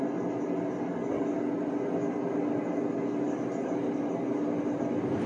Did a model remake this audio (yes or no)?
no